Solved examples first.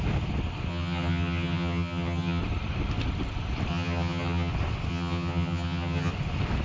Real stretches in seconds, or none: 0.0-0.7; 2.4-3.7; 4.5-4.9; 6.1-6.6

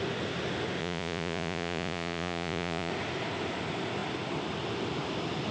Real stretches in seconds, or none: 0.0-0.8; 2.9-5.5

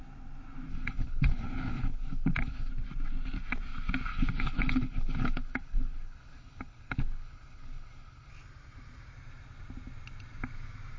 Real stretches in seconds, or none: 0.0-0.7; 2.7-4.1; 8.3-11.0

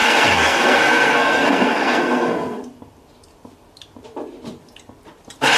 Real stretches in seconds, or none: 2.6-5.6

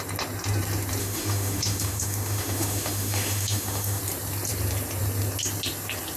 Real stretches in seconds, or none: 0.0-1.0; 4.0-6.2